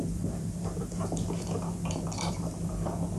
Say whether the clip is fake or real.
fake